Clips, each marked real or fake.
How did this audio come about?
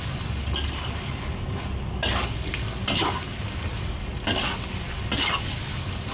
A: real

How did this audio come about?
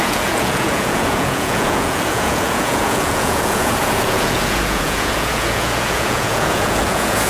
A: fake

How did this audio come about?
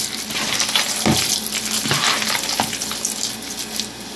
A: real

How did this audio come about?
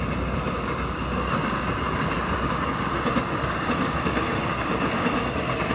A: fake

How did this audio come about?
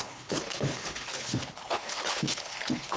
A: fake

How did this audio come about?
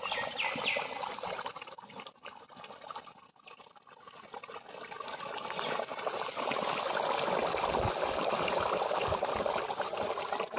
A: real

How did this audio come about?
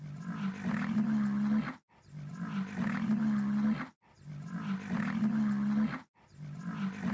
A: real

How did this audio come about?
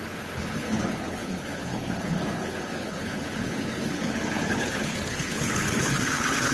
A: fake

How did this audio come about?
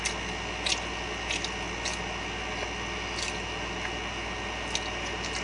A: real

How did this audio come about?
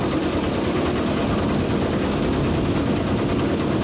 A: real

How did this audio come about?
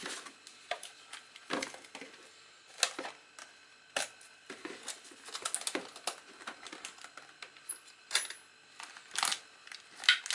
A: real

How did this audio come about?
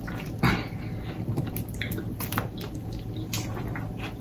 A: real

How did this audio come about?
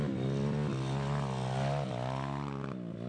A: real